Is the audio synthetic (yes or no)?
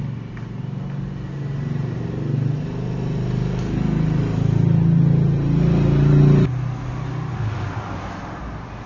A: no